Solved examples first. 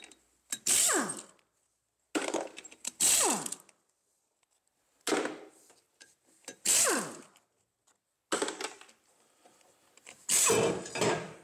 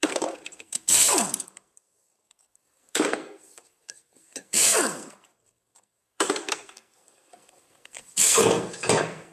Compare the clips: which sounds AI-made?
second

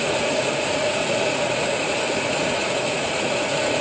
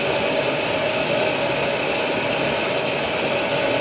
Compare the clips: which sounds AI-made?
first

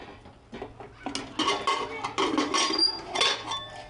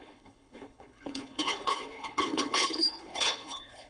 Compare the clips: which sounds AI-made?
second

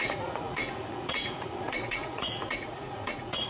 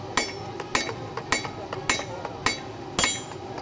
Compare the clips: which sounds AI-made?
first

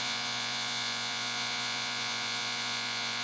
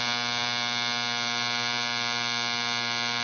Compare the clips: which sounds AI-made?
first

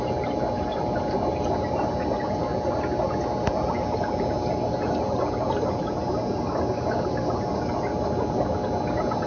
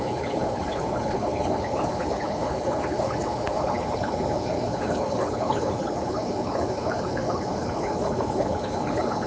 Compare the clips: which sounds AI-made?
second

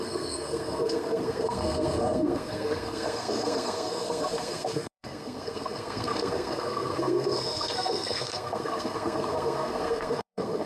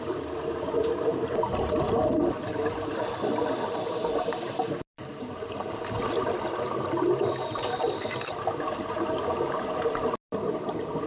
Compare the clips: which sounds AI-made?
first